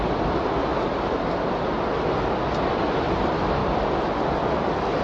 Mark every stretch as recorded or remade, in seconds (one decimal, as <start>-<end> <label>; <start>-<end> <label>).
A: 0.0-0.7 remade; 0.7-2.8 recorded; 2.8-3.6 remade; 3.6-4.5 recorded; 4.5-5.0 remade